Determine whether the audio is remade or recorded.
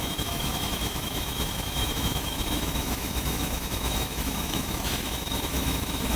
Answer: remade